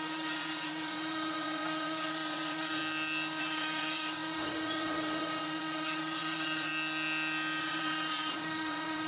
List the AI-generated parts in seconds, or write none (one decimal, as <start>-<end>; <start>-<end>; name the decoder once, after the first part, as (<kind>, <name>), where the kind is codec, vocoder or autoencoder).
0.0-2.8 (vocoder, WaveNeXt); 3.4-6.7; 7.6-9.1